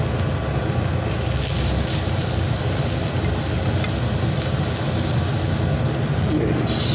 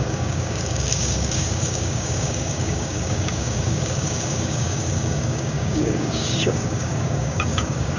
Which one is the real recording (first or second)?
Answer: first